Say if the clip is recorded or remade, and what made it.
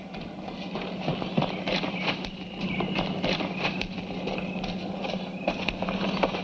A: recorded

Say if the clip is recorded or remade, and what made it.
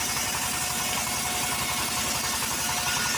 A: recorded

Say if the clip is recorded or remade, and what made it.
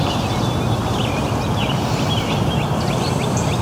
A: recorded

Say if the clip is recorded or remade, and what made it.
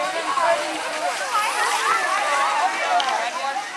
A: recorded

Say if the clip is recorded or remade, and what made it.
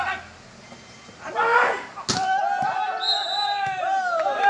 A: recorded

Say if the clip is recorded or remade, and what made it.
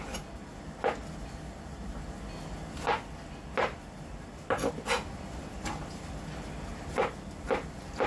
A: recorded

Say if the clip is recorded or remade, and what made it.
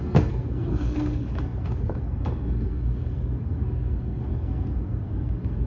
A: remade, codec, SNAC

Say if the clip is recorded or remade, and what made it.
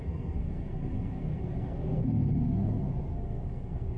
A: remade, codec, SNAC